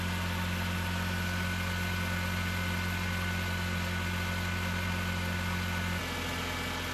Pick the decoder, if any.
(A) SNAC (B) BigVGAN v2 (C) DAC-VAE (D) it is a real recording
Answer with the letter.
D